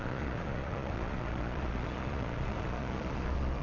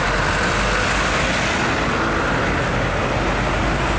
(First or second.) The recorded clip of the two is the second